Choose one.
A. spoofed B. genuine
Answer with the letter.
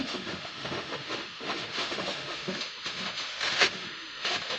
A